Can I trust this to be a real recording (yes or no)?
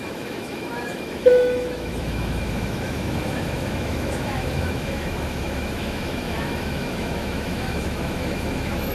no